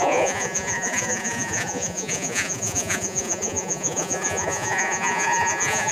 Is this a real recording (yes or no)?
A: no